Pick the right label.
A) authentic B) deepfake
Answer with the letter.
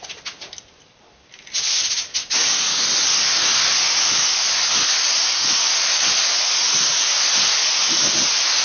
A